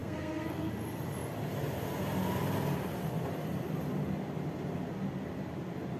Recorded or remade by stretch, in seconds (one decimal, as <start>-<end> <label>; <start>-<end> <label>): 0.0-0.7 remade; 0.7-6.0 recorded